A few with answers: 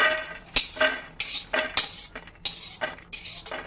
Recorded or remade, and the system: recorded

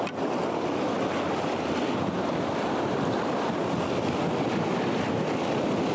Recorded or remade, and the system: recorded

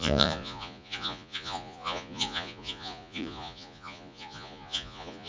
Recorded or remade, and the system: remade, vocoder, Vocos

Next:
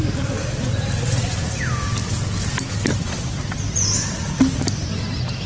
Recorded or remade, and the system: recorded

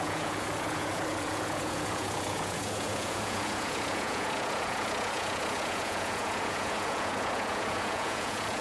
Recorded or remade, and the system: remade, vocoder, Vocos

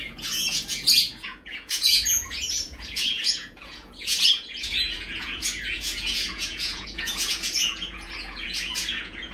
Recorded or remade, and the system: remade, vocoder, Vocos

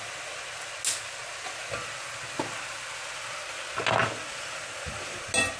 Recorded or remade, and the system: recorded